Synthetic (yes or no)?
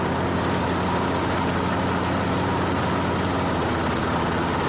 no